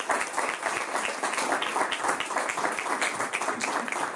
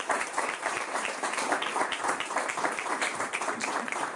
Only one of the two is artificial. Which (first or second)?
second